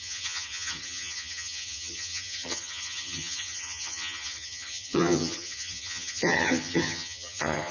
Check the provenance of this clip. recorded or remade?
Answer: remade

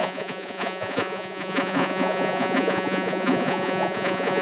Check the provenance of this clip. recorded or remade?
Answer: remade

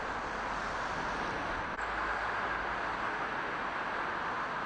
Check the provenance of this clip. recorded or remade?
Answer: recorded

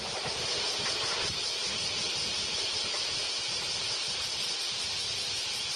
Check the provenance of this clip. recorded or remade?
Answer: recorded